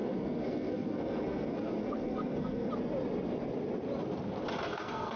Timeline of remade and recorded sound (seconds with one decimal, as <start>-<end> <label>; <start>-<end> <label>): 0.0-2.7 remade; 2.7-4.6 recorded; 4.6-5.2 remade